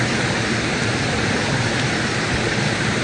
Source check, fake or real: fake